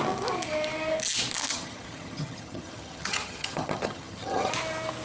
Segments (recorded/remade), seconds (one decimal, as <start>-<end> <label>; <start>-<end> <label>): 0.0-1.5 recorded; 1.5-4.5 remade; 4.5-5.0 recorded